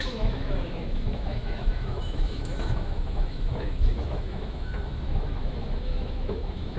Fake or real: fake